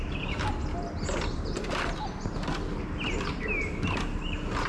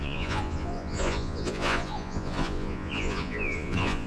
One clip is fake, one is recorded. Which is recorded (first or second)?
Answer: first